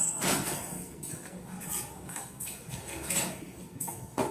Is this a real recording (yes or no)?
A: no